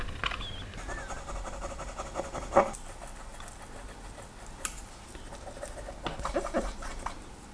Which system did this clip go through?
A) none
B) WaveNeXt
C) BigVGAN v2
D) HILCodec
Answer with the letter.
A